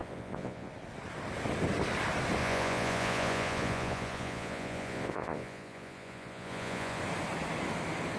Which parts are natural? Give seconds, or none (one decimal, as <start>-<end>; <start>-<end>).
0.7-2.4; 7.0-8.2